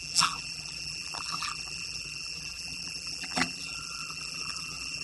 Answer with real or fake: fake